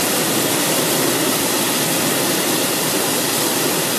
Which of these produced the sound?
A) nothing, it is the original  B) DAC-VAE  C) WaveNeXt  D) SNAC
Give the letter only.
A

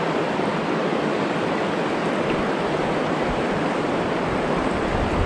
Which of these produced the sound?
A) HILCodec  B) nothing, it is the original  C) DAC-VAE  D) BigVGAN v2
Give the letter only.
B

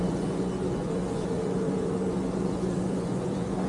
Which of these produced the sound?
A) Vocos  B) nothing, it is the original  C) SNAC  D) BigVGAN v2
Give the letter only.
A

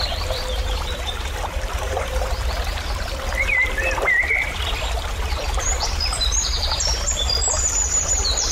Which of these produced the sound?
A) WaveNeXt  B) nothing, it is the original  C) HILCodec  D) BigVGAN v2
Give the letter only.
D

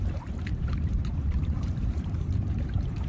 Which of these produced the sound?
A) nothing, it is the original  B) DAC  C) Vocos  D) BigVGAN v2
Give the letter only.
D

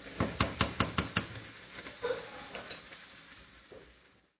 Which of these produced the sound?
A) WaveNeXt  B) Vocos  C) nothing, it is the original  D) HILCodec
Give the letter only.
C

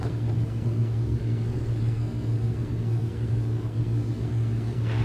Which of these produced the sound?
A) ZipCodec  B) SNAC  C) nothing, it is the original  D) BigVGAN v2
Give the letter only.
B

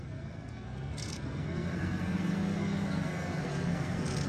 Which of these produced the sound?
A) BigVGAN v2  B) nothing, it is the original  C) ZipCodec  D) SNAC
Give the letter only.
D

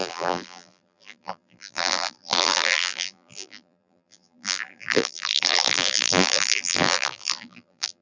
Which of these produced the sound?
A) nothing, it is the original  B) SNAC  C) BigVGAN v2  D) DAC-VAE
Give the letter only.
C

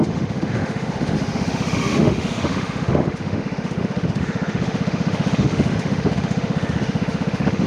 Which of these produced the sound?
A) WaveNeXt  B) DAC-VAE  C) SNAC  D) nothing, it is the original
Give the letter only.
B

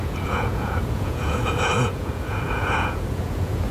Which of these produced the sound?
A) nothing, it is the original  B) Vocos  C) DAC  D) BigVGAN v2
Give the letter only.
B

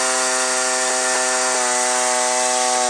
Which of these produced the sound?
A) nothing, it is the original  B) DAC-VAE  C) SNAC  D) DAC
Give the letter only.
A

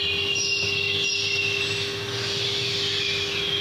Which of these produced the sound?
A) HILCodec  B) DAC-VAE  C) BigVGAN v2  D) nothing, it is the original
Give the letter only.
D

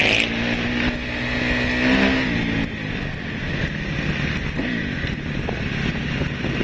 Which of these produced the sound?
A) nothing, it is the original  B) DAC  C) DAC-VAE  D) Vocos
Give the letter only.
A